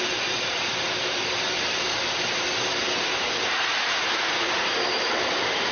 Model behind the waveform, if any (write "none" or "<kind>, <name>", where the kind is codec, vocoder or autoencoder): vocoder, BigVGAN v2